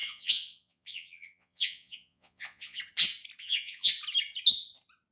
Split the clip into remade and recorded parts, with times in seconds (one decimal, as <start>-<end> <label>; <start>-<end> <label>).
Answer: 0.0-2.8 remade; 2.8-3.4 recorded; 3.4-3.9 remade; 3.9-5.1 recorded